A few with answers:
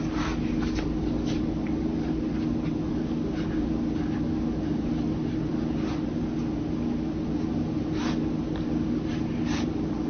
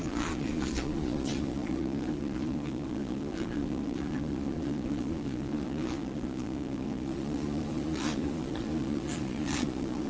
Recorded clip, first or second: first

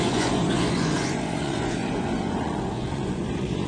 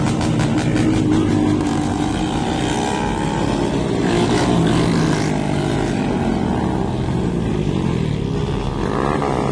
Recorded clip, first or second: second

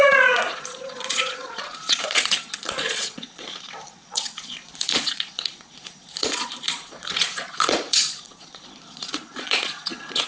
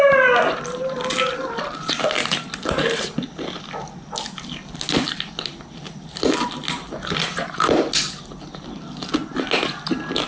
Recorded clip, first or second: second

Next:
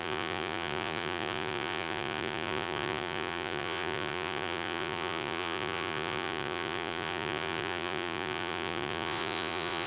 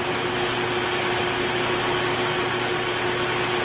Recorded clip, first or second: second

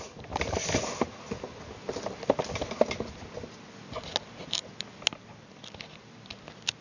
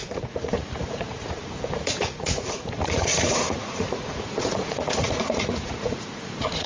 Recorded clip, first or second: first